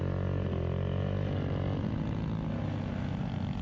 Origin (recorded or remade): recorded